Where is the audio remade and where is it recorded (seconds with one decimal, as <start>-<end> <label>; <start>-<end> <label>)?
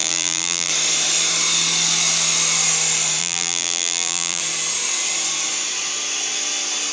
0.0-0.7 remade; 0.7-3.2 recorded; 3.2-4.4 remade; 4.4-6.9 recorded